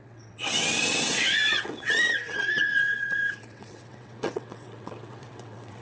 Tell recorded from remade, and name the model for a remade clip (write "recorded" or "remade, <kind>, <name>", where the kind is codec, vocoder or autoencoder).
remade, vocoder, WaveNeXt